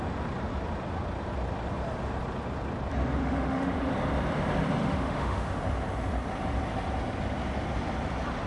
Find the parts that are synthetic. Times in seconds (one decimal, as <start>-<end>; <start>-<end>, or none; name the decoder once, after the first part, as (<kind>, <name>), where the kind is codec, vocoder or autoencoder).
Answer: 3.2-3.9 (autoencoder, DAC-VAE); 4.8-5.6